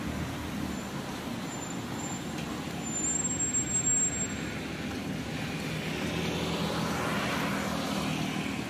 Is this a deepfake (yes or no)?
no